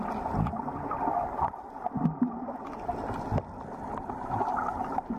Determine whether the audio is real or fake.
real